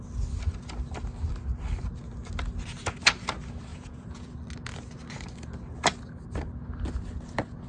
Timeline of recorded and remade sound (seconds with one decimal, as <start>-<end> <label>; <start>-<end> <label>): 0.0-3.7 recorded; 3.7-4.3 remade; 4.3-7.7 recorded